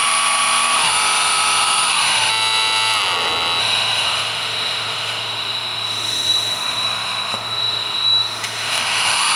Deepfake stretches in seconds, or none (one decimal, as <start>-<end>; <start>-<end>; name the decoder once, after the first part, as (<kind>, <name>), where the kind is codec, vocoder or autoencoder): 0.0-2.3 (autoencoder, DAC-VAE); 3.6-9.4

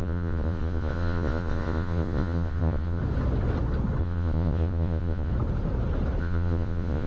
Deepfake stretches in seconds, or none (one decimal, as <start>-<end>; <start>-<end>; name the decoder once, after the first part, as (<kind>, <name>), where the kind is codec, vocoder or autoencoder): 0.0-3.0 (vocoder, Vocos); 4.0-5.3; 6.2-7.1

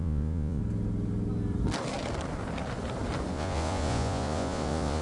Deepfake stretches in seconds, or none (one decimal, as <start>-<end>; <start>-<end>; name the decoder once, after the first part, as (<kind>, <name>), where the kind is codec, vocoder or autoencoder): 0.0-0.6 (vocoder, Vocos); 3.3-5.0